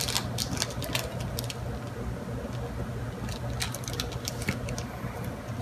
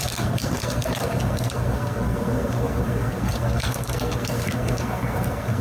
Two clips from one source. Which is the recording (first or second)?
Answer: first